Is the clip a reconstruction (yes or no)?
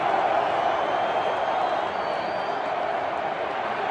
no